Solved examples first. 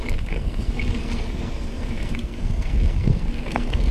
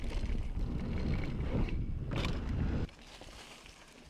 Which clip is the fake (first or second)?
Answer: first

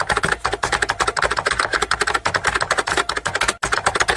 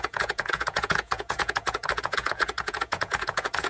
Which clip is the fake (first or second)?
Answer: second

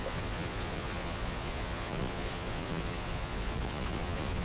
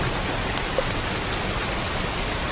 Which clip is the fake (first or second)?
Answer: first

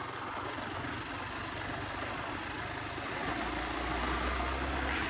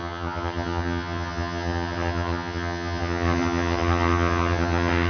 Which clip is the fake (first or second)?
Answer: second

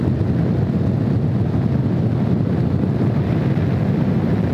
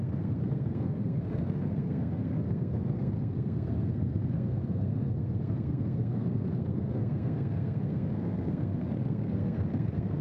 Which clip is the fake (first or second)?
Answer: second